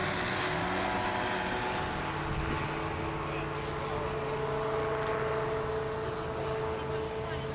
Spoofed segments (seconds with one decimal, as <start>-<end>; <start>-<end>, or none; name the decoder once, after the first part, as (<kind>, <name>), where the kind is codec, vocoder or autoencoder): none